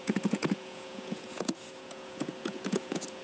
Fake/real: fake